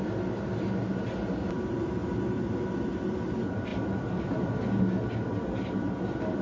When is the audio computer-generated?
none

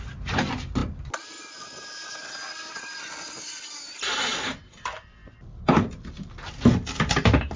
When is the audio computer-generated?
none